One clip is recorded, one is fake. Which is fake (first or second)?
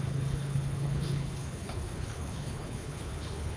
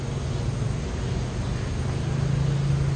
first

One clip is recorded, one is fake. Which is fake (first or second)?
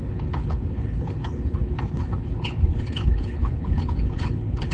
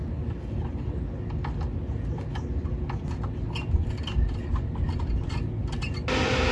first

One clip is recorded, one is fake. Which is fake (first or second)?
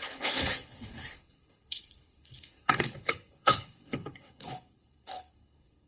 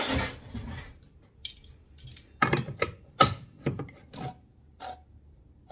first